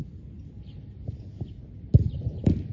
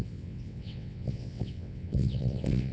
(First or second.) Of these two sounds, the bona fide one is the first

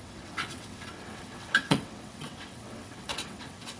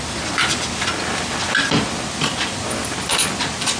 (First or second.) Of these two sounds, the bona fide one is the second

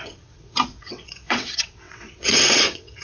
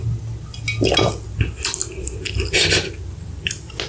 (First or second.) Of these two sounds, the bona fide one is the second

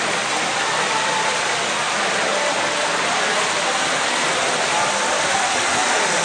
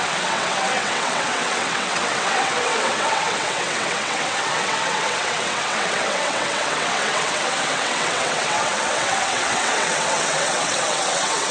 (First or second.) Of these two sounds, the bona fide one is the first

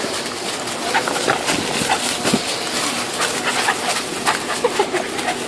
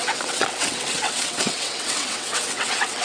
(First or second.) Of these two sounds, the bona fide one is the first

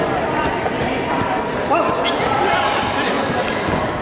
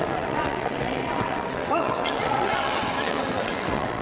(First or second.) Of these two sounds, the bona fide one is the first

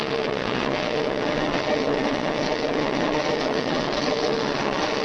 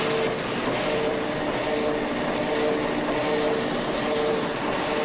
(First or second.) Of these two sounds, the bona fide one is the second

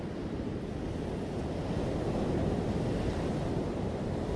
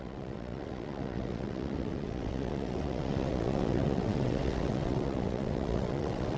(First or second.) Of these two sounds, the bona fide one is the first